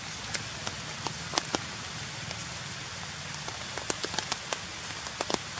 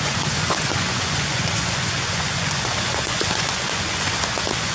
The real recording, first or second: first